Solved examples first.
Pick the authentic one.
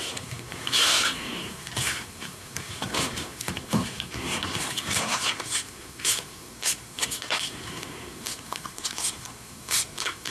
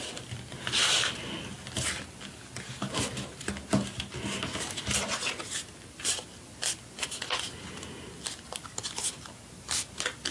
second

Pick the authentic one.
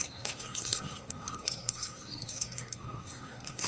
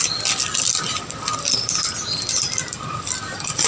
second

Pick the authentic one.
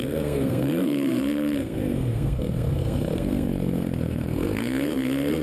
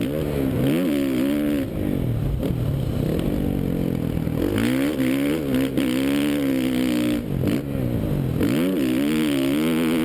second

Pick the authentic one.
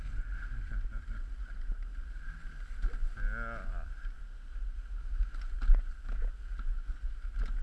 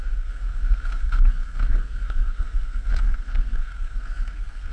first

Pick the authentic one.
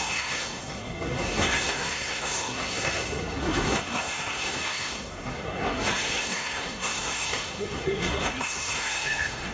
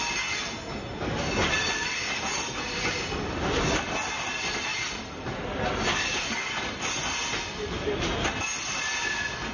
second